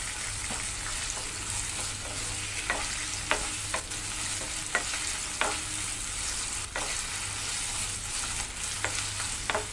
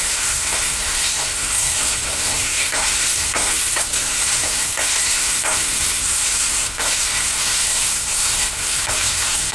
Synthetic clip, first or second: second